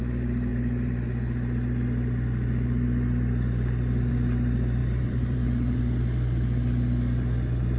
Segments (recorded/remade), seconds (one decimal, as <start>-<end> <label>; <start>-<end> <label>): 0.0-4.8 recorded; 4.8-5.8 remade; 5.8-7.8 recorded